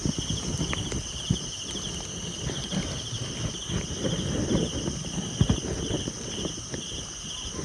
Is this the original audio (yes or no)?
yes